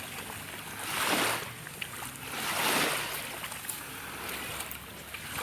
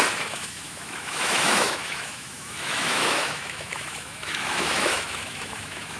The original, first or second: first